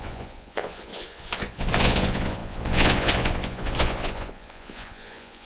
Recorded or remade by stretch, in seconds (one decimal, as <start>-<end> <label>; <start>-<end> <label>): 0.0-5.5 remade